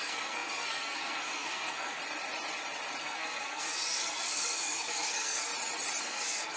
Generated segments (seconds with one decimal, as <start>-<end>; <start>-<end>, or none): 0.0-2.0; 3.0-5.5; 6.0-6.6